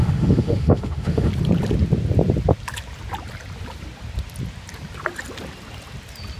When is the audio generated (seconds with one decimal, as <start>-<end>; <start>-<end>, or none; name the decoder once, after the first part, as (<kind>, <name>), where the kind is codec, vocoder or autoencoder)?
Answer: 0.0-1.3 (autoencoder, DAC-VAE)

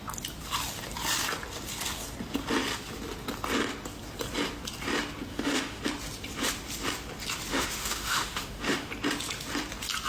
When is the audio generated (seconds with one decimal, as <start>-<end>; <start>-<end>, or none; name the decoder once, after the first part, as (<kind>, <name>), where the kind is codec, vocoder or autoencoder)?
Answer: 5.3-5.8 (autoencoder, DAC-VAE); 7.5-8.9

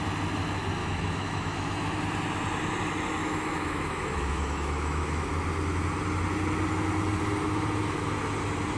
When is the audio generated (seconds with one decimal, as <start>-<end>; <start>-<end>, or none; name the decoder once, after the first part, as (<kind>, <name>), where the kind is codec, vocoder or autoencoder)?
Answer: 0.8-2.0 (autoencoder, DAC-VAE); 3.2-5.3

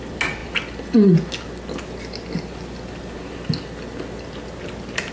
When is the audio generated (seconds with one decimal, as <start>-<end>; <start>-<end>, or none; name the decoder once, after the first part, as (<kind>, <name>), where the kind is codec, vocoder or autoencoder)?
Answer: none